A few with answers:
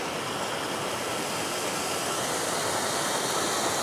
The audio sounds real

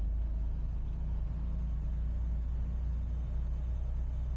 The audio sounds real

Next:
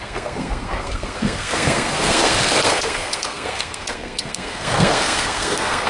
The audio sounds fake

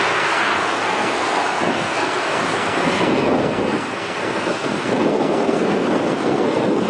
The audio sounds fake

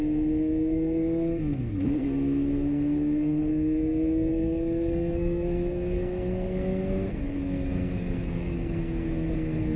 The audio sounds fake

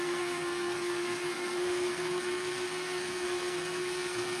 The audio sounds fake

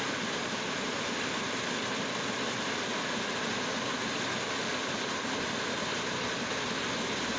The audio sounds real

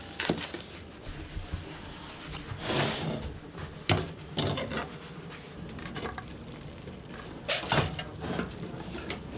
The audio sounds real